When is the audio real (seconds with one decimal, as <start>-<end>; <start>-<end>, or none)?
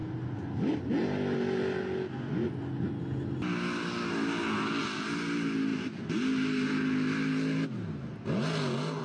0.0-9.0